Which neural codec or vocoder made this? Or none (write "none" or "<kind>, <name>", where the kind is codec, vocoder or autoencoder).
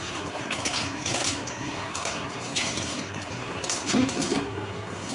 codec, SNAC